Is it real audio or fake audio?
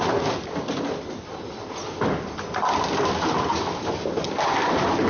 real